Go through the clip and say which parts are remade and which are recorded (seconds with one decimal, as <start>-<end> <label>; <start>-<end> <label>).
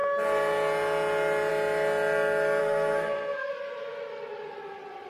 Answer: 0.0-2.6 recorded; 2.6-3.5 remade; 3.5-5.1 recorded